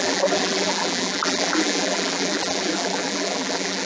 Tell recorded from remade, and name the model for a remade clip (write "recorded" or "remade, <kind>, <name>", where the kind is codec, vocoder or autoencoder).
remade, vocoder, BigVGAN v2